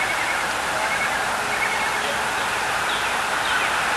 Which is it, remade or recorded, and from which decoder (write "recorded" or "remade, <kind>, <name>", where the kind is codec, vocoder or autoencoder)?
recorded